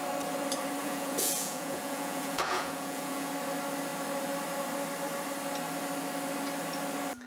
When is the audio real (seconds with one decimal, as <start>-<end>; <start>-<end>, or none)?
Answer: 0.0-0.8; 3.3-7.3